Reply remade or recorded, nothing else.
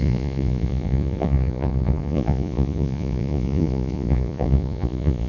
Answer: remade